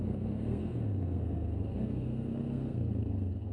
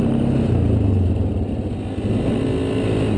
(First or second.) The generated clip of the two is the first